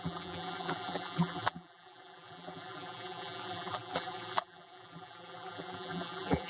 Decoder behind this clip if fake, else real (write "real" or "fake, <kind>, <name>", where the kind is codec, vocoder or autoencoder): fake, vocoder, BigVGAN v2